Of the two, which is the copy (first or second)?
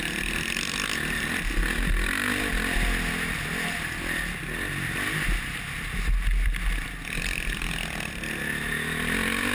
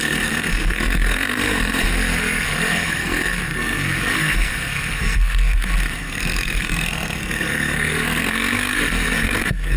second